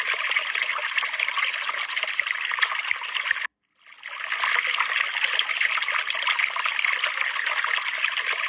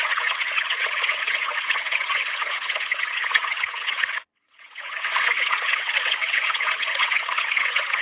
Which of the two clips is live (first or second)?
first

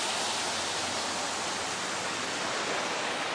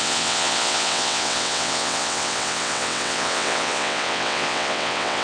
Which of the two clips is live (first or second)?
first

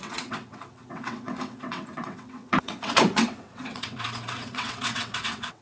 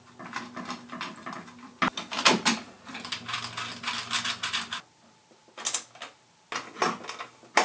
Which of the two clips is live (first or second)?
second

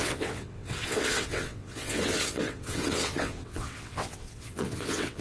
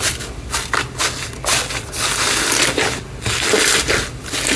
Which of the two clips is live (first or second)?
second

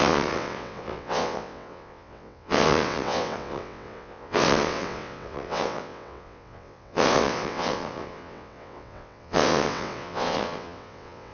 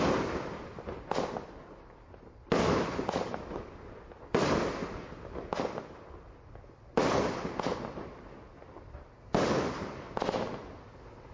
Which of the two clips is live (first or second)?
second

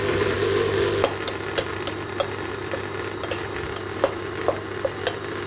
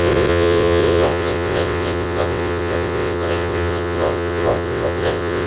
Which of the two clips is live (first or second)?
first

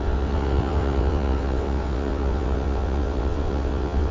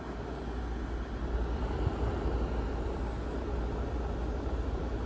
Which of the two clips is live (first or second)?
second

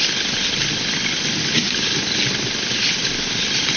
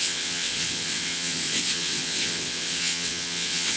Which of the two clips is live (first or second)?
first